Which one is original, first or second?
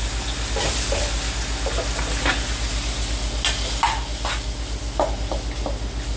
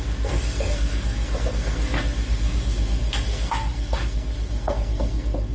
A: first